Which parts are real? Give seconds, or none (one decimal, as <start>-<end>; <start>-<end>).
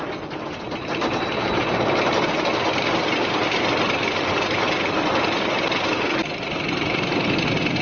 0.0-7.8